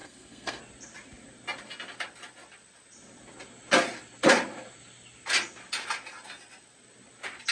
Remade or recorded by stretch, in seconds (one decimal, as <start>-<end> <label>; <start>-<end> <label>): 0.0-0.6 remade; 0.6-7.5 recorded